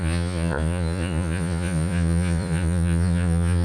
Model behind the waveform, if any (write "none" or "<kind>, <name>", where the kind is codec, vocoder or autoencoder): vocoder, Vocos